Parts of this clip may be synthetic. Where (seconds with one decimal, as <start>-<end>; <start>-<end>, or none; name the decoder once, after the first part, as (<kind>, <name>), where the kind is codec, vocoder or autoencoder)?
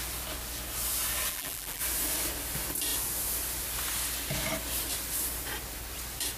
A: 1.3-1.8 (vocoder, BigVGAN v2)